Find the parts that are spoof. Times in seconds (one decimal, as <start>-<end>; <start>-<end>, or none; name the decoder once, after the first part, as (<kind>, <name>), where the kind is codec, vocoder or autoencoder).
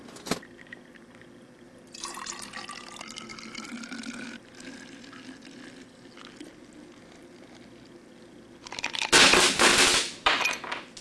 none